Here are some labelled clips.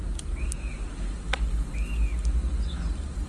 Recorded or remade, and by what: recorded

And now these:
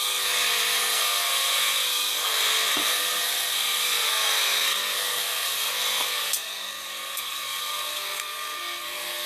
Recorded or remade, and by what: remade, codec, SNAC